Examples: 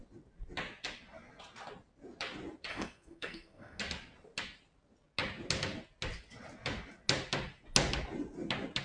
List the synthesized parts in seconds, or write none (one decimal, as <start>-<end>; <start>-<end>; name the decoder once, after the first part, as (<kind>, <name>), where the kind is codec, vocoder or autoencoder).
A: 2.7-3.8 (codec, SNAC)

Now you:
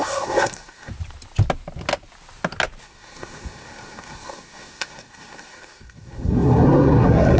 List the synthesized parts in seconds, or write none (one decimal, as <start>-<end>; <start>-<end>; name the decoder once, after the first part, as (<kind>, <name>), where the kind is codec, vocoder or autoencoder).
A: 0.0-0.9 (codec, SNAC); 2.8-7.4

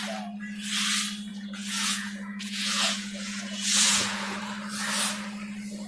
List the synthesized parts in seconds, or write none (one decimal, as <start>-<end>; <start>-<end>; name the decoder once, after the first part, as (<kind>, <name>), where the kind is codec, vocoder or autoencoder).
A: 1.3-4.4 (vocoder, Vocos)

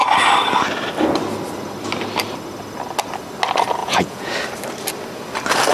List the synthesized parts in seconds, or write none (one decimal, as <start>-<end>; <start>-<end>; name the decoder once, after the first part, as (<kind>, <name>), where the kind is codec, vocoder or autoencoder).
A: 3.8-4.3 (vocoder, Vocos)